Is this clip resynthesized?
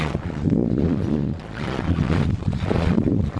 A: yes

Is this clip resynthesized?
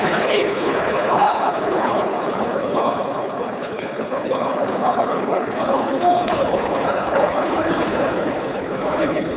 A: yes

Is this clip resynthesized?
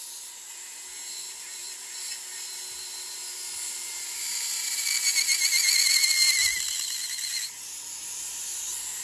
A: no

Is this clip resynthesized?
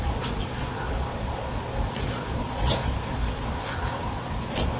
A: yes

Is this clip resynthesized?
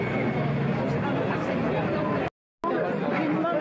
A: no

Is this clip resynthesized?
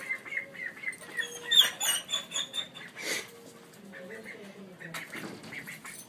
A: no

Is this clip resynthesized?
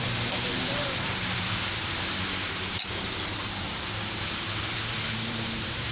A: yes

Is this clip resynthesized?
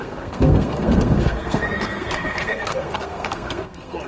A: yes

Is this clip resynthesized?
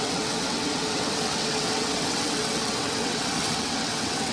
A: yes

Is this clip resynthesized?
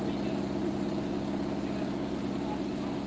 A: no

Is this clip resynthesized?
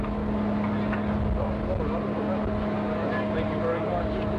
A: no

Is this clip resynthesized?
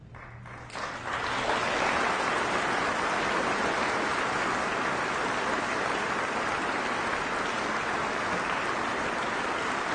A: no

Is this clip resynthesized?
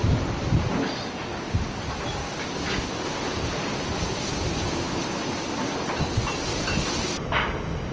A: no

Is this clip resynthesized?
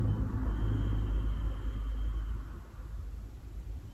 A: no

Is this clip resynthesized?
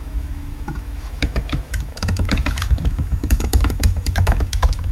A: yes